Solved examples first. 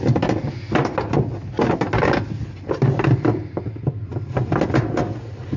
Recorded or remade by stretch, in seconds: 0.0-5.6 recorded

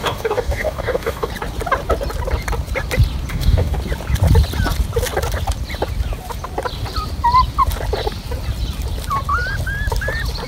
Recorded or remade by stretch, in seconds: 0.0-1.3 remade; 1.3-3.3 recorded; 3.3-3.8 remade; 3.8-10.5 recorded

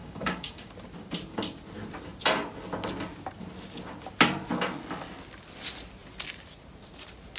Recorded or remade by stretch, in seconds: 0.0-0.7 remade; 0.7-7.4 recorded

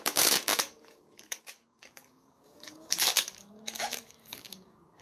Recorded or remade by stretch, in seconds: 0.0-5.0 remade

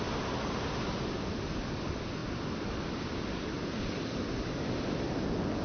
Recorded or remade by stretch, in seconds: 0.0-5.6 recorded

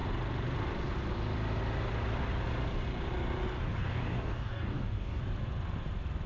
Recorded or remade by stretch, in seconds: 0.0-3.8 recorded; 3.8-5.2 remade; 5.2-6.3 recorded